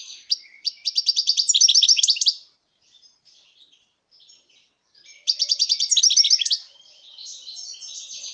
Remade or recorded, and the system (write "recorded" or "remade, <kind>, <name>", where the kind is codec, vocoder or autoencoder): remade, vocoder, BigVGAN v2